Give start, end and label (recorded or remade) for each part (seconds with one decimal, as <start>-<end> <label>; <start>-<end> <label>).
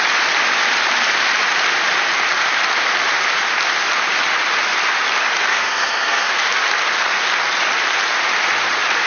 0.0-5.5 recorded; 5.5-6.3 remade; 6.3-9.1 recorded